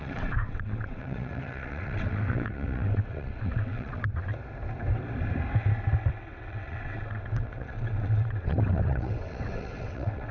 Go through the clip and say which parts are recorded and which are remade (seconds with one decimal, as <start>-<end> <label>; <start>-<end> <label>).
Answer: 0.0-4.3 remade; 4.3-6.1 recorded; 6.1-10.3 remade